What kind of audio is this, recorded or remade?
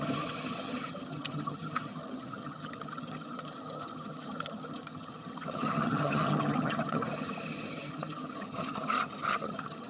remade